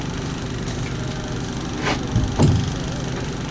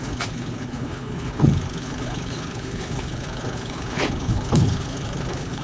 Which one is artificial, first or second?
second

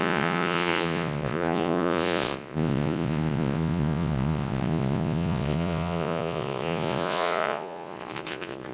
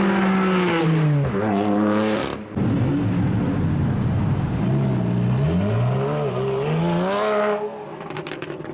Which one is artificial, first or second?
first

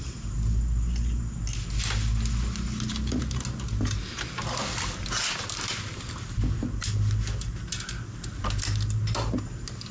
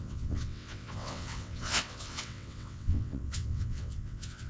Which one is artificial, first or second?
second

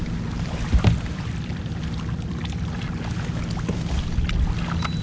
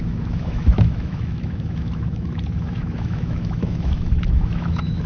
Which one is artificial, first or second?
second